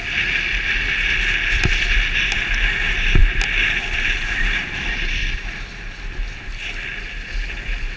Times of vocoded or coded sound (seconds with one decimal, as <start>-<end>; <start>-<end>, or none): none